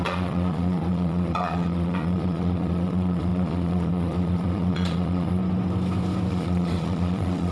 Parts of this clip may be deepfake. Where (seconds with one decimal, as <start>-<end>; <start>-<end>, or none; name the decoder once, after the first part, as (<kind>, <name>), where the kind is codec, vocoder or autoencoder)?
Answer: 0.0-5.4 (vocoder, Vocos); 6.3-7.5